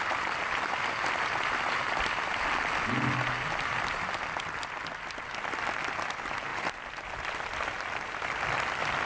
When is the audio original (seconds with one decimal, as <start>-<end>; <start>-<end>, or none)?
0.0-9.1